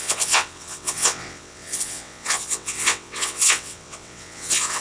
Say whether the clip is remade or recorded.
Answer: remade